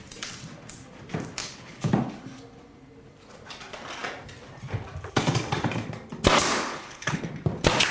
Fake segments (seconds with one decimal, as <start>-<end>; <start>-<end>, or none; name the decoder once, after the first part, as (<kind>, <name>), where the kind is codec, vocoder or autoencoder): 1.4-1.9 (codec, HILCodec); 6.7-7.2